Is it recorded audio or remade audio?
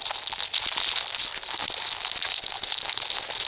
recorded